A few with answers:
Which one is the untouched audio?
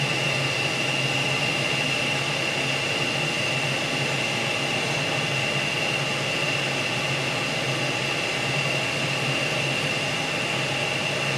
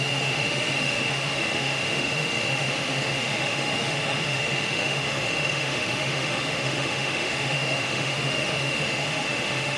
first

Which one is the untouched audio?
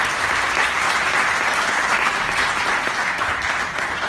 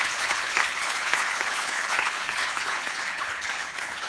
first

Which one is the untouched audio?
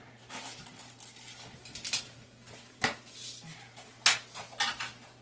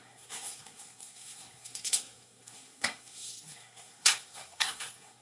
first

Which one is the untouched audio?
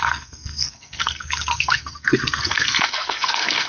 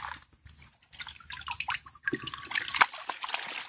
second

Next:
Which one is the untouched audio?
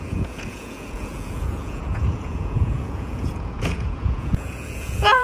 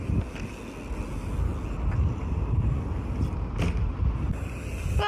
second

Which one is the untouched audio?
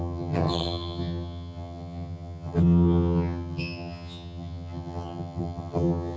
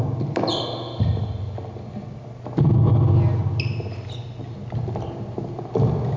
second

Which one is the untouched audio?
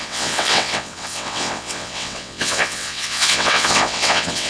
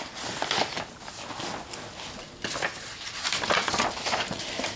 second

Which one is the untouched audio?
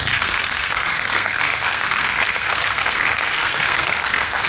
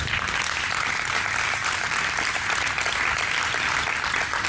second